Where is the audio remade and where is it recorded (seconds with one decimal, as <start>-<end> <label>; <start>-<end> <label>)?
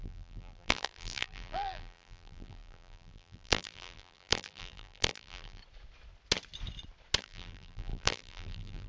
0.0-5.6 remade; 5.6-7.2 recorded; 7.2-8.9 remade